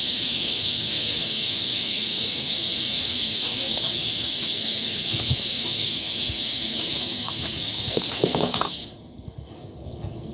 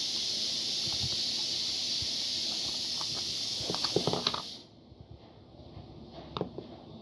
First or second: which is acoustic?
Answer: second